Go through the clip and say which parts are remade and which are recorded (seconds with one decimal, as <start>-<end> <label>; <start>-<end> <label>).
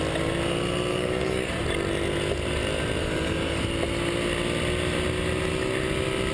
0.0-0.9 recorded; 0.9-1.5 remade; 1.5-3.0 recorded; 3.0-3.6 remade; 3.6-6.3 recorded